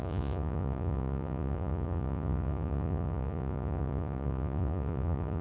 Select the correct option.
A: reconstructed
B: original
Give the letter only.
A